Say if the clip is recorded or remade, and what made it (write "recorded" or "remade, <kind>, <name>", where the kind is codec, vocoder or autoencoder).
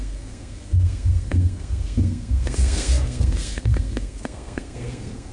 remade, codec, SNAC